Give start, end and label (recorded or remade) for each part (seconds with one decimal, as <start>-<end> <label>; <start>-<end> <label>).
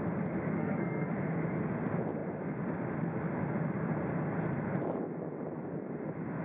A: 0.0-0.6 recorded; 0.6-1.1 remade; 1.1-6.4 recorded